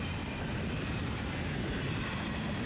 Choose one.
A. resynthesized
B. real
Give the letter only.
B